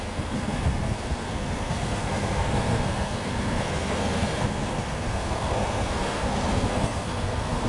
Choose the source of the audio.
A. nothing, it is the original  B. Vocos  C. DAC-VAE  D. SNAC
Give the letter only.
D